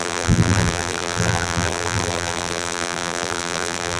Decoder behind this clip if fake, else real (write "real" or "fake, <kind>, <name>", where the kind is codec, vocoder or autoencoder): fake, vocoder, BigVGAN v2